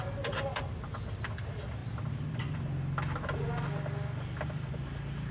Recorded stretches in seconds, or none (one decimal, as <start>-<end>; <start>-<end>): 1.8-4.7